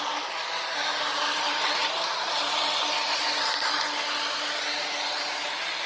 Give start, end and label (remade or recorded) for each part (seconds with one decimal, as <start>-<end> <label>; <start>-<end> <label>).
0.0-5.9 recorded